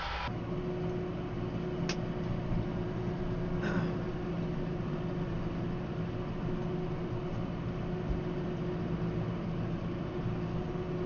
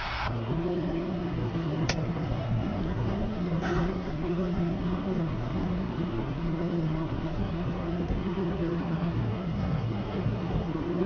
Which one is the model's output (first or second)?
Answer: second